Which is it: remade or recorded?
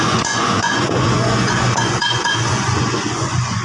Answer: remade